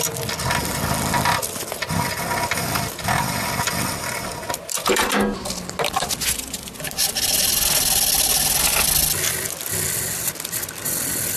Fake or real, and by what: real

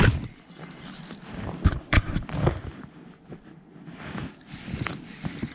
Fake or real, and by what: real